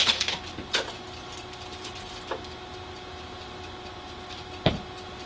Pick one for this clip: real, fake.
real